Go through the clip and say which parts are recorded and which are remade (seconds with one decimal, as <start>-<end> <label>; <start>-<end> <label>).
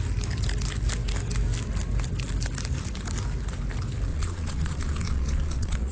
0.0-4.1 recorded; 4.1-5.9 remade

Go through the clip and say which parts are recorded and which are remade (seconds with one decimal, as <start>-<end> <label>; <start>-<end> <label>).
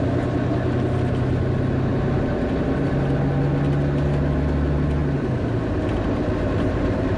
0.0-7.2 recorded